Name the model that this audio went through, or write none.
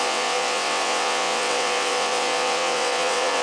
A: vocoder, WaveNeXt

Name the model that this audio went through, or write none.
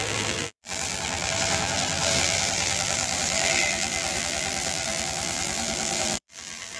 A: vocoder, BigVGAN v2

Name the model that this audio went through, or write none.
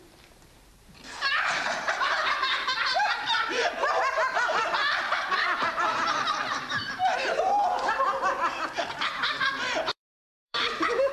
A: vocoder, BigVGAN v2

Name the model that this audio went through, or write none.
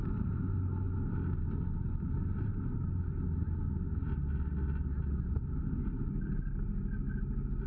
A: none